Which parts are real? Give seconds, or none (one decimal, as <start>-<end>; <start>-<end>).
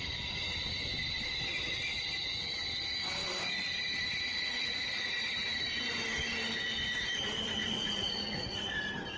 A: 0.0-4.3; 5.1-7.6; 8.6-9.2